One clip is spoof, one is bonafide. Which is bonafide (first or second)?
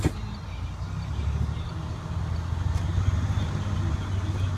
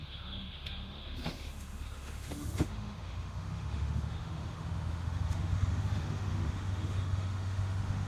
first